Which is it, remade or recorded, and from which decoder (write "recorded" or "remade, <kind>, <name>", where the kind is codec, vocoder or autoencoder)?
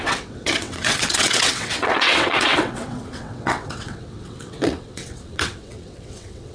remade, vocoder, WaveNeXt